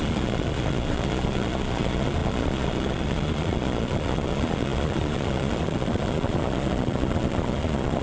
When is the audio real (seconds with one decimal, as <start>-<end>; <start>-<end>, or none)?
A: none